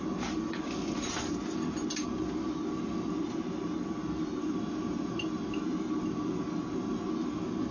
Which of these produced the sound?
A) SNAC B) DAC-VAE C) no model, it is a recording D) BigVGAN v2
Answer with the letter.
C